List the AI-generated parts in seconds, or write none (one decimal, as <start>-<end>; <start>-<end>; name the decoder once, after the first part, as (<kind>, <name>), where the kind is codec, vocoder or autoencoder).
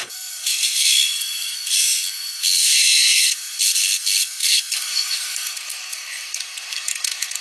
0.0-7.4 (codec, SNAC)